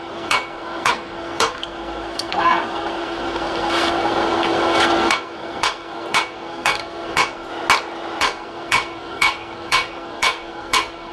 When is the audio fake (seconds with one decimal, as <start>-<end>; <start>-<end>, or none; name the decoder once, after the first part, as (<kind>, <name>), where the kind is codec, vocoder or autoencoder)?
0.0-7.5 (codec, SNAC); 8.2-11.1